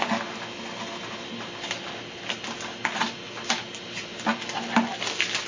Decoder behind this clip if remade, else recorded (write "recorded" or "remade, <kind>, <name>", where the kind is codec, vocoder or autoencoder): recorded